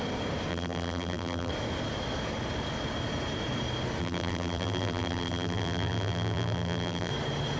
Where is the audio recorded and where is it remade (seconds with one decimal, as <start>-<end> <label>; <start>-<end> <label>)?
0.0-0.5 recorded; 0.5-1.5 remade; 1.5-4.0 recorded; 4.0-7.1 remade; 7.1-7.6 recorded